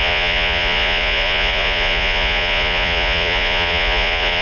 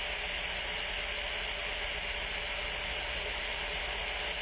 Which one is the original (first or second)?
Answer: second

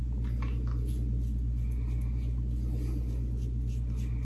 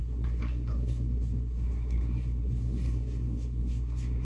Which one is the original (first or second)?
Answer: first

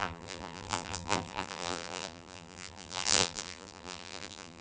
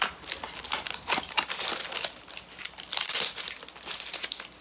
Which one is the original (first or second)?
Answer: second